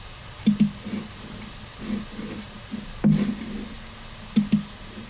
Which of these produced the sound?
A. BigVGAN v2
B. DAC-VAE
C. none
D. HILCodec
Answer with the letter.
C